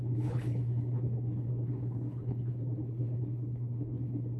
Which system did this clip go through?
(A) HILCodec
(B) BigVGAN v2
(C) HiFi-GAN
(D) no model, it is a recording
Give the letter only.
A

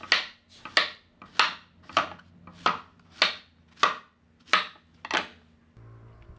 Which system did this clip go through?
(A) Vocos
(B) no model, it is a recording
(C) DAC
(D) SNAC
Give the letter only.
B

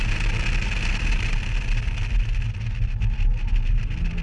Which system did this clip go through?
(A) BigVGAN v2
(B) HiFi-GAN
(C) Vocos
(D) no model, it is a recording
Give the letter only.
D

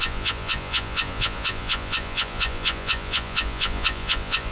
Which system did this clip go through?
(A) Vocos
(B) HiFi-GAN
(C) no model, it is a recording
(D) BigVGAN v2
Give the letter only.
A